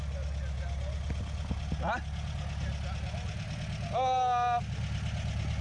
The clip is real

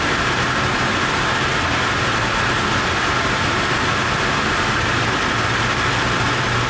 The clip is real